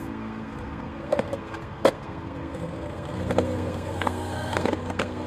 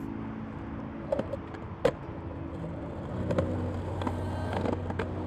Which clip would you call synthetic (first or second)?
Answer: first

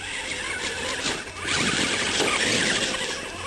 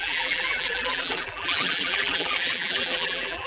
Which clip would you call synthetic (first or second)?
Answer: second